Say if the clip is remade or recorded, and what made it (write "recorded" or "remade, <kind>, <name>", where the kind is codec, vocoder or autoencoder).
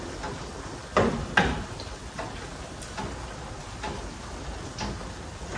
recorded